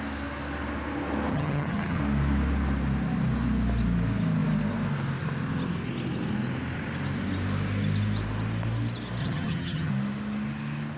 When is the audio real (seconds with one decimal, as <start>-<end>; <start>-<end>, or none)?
0.0-1.3; 2.0-9.2; 9.9-11.0